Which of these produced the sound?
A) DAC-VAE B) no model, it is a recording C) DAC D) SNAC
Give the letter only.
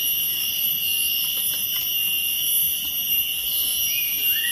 B